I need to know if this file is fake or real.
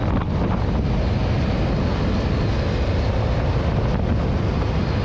real